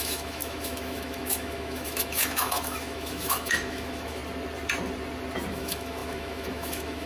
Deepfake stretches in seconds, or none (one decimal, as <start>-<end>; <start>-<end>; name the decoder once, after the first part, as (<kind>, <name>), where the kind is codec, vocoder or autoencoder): 0.0-4.2 (autoencoder, DAC-VAE); 5.5-7.1